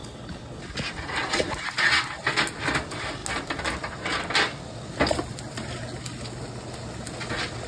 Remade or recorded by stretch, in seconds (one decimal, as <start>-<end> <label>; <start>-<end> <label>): 0.0-0.6 remade; 0.6-7.7 recorded